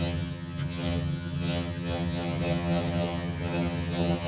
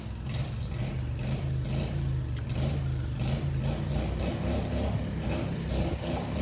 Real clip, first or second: second